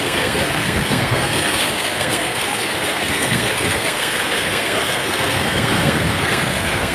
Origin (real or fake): fake